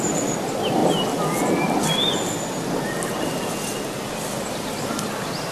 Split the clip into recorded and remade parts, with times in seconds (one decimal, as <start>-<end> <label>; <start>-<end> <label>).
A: 0.0-0.8 remade; 0.8-4.1 recorded; 4.1-5.5 remade